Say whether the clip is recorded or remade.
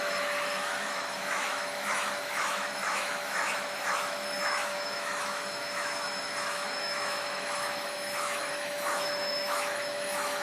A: remade